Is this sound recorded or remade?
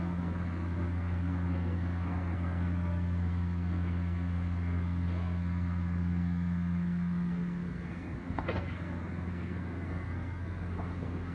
remade